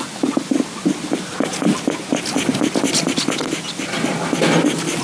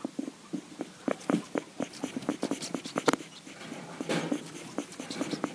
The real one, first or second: first